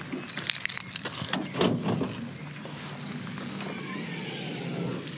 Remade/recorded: recorded